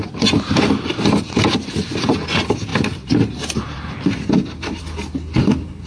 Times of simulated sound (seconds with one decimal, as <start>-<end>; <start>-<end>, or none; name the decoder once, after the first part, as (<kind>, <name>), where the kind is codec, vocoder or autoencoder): 2.7-4.8 (vocoder, BigVGAN v2)